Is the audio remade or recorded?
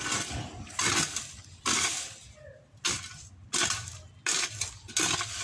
recorded